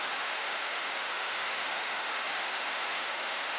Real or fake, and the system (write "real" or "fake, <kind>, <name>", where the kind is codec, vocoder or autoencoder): fake, autoencoder, DAC-VAE